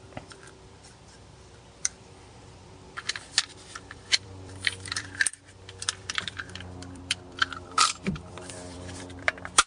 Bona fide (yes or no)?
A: no